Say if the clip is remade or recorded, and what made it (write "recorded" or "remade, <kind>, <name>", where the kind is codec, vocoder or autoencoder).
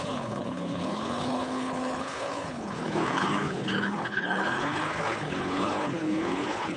remade, codec, HILCodec